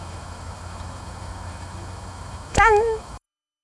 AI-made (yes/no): yes